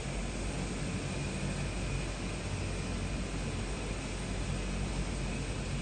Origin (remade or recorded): recorded